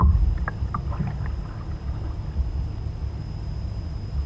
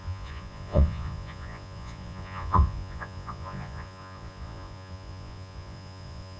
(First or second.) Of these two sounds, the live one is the first